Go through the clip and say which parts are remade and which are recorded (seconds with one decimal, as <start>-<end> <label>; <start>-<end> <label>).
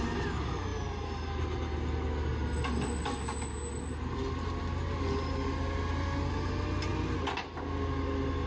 0.0-8.5 recorded